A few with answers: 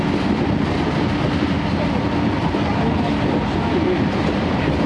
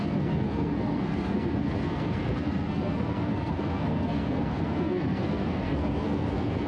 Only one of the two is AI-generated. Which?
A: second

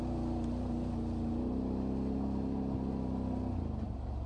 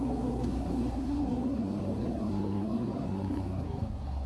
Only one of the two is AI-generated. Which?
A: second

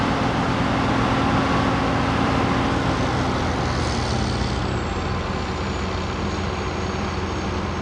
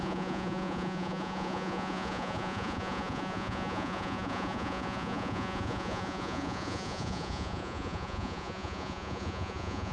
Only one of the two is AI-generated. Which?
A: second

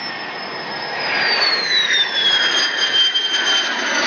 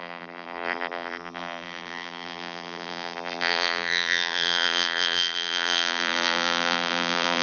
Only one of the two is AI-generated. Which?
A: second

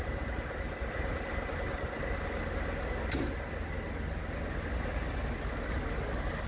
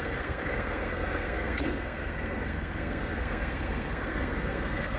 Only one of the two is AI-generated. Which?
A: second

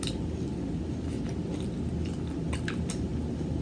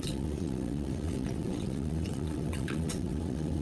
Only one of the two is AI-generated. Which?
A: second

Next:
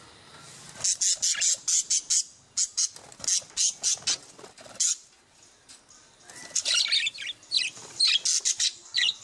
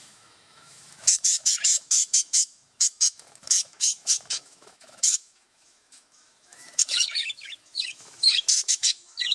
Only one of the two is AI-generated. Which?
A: second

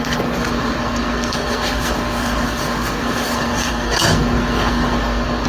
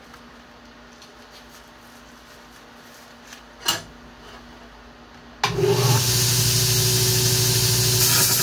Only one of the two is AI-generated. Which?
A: first